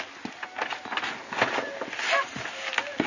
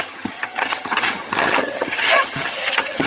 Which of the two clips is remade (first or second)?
second